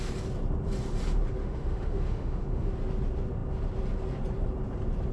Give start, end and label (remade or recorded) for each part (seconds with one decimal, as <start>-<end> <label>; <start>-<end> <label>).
0.0-1.4 recorded; 1.4-2.7 remade; 2.7-5.1 recorded